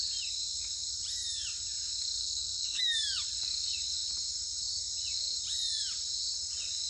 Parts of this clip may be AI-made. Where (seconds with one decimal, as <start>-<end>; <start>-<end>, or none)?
2.2-2.8